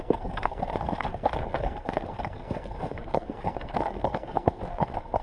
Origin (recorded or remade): remade